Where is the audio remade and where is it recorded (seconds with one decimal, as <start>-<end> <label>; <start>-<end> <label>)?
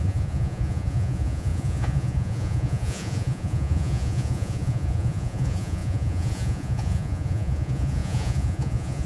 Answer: 0.0-9.1 remade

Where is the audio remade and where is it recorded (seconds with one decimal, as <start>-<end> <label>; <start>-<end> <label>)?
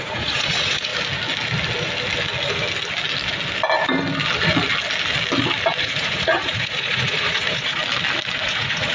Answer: 0.0-0.9 remade; 0.9-5.8 recorded; 5.8-7.8 remade; 7.8-8.4 recorded; 8.4-8.9 remade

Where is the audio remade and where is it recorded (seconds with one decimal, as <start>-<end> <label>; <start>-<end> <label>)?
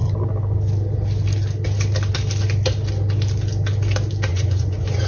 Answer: 0.0-4.3 recorded; 4.3-5.1 remade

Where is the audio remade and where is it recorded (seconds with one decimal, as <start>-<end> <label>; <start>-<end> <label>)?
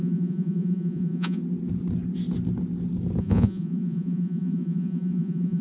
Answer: 0.0-1.4 remade; 1.4-3.2 recorded; 3.2-5.6 remade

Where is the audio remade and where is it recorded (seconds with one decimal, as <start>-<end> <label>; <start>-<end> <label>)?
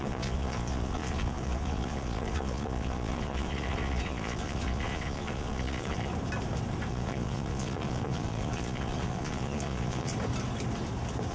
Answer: 0.0-6.1 remade; 6.1-6.9 recorded; 6.9-10.1 remade; 10.1-11.3 recorded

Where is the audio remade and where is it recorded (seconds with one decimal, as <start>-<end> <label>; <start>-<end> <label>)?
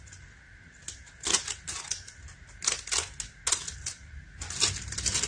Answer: 0.0-5.3 recorded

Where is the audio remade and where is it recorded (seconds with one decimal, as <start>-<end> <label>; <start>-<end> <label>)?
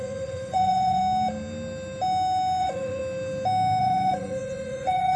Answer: 0.0-1.0 remade; 1.0-2.6 recorded; 2.6-3.0 remade; 3.0-3.8 recorded; 3.8-5.2 remade